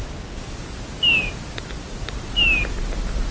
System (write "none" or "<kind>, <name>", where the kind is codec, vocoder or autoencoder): none